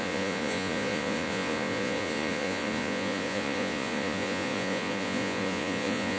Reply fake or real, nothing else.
fake